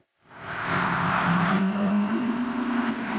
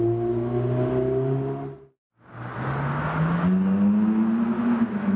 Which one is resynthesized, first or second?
first